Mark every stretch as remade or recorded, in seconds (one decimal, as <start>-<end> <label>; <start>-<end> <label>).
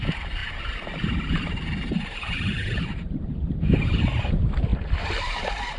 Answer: 0.0-0.4 recorded; 0.4-3.5 remade; 3.5-4.7 recorded; 4.7-5.8 remade